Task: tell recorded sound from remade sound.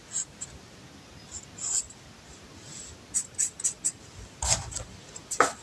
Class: recorded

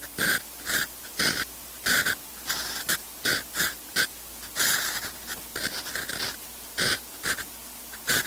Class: recorded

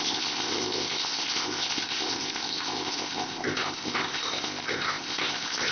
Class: remade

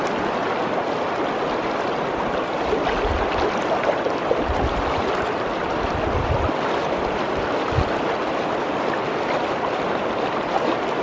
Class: recorded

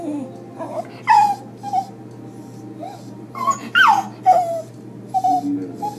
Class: recorded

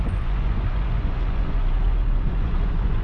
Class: remade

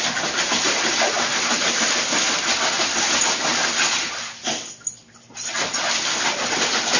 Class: recorded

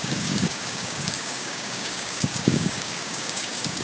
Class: remade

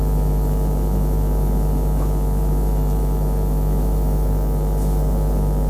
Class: remade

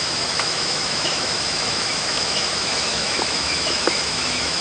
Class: remade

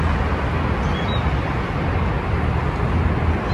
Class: recorded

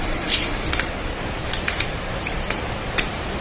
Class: remade